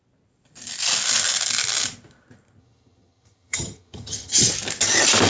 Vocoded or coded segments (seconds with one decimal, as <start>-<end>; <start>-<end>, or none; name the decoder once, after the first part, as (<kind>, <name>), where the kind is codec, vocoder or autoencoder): 2.6-4.5 (vocoder, HiFi-GAN)